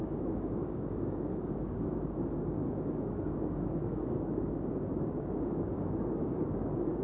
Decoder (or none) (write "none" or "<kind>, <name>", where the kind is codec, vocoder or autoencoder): codec, DAC